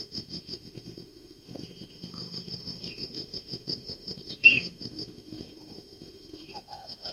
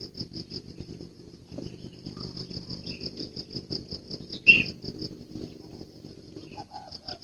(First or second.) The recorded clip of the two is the second